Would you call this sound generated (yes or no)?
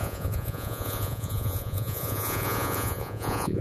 yes